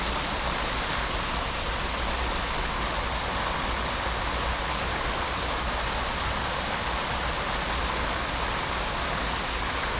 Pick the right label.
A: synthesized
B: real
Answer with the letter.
B